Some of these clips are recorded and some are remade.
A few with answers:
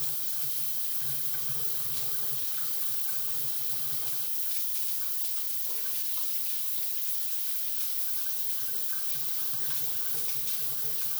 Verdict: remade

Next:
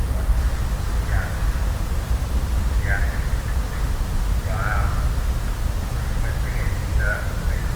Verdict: recorded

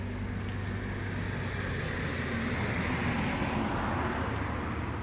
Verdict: recorded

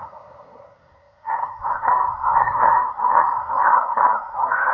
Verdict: remade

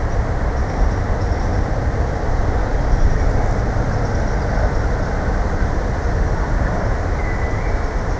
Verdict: recorded